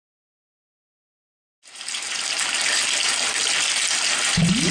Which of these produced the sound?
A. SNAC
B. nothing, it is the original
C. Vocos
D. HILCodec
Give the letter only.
B